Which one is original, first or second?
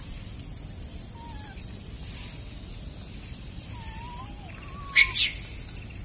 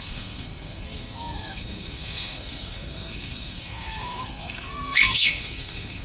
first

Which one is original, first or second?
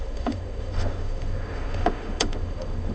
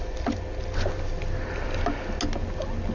second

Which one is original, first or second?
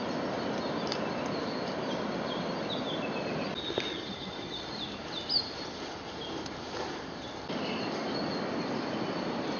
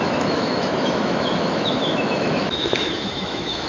first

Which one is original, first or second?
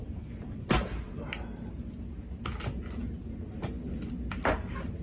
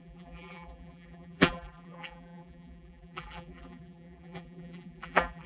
first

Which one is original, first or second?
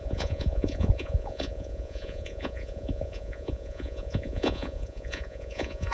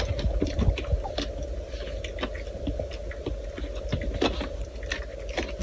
second